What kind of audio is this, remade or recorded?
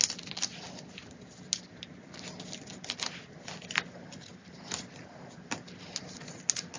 recorded